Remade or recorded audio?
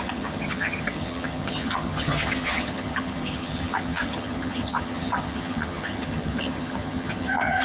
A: remade